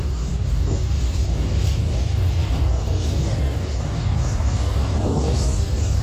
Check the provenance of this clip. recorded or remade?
remade